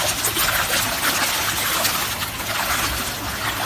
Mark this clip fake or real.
real